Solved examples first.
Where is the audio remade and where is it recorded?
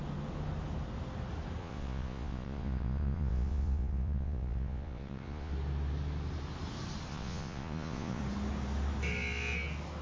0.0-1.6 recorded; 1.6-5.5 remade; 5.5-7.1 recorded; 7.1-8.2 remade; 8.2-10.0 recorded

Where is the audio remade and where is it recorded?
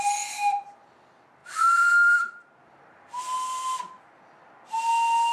0.0-1.4 recorded; 1.4-3.2 remade; 3.2-5.3 recorded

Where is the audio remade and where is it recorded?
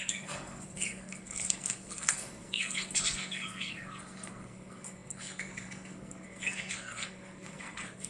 0.0-8.1 remade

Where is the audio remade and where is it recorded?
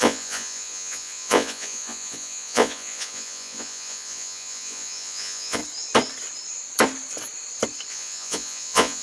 0.0-5.6 remade; 5.6-7.9 recorded; 7.9-9.0 remade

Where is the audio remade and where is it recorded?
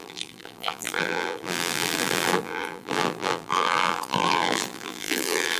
0.0-5.6 remade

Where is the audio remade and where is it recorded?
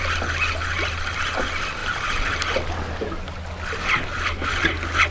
0.0-5.1 recorded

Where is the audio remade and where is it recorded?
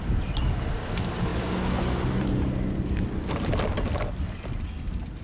0.0-5.2 recorded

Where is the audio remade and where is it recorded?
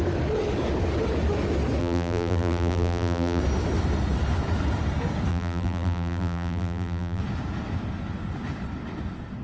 0.0-1.8 recorded; 1.8-3.4 remade; 3.4-5.3 recorded; 5.3-7.2 remade; 7.2-9.4 recorded